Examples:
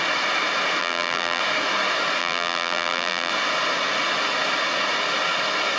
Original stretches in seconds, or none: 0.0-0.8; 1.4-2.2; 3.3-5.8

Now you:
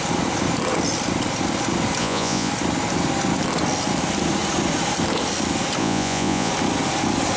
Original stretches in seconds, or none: 0.0-2.0; 2.5-5.8; 6.5-7.4